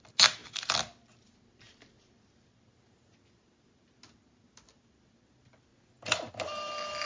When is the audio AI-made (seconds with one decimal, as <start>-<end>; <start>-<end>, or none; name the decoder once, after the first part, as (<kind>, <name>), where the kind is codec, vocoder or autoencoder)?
none

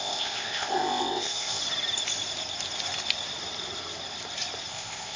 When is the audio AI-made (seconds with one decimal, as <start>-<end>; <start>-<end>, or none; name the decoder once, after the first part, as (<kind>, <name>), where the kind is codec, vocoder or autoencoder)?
0.0-1.6 (codec, ZipCodec); 4.7-5.2

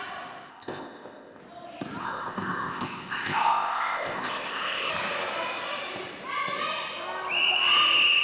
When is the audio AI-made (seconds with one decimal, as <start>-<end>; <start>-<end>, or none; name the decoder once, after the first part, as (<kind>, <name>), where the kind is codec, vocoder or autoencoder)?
0.5-1.4 (codec, ZipCodec); 2.0-4.9